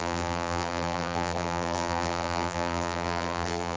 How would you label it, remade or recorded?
remade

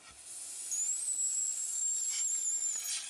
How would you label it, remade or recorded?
recorded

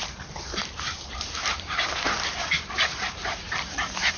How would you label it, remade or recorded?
remade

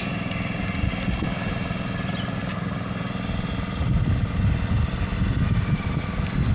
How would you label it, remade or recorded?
recorded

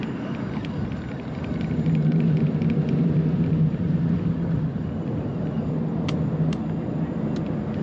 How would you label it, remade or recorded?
recorded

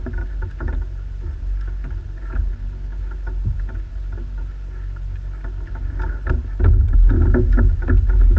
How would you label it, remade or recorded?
recorded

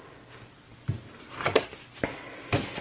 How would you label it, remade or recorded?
recorded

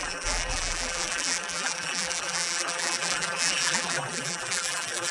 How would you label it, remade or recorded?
remade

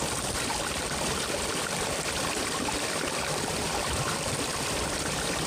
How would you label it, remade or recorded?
remade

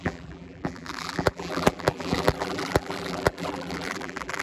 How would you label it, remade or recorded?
remade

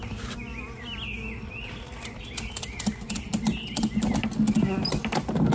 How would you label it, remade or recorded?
recorded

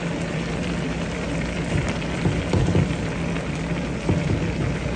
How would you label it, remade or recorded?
remade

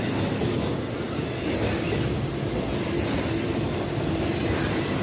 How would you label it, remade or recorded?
recorded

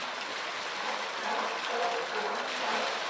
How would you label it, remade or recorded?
recorded